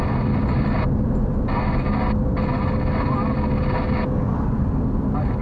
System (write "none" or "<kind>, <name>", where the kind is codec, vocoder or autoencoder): none